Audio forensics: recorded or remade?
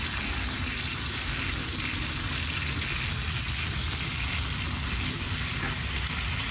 recorded